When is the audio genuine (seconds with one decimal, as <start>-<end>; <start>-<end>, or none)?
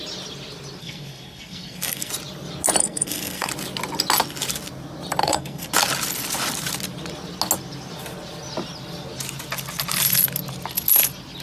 0.0-0.8; 2.1-2.8; 3.5-5.2; 5.7-11.4